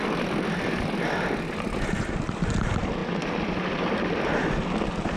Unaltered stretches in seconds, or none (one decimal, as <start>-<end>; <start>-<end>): 0.0-5.2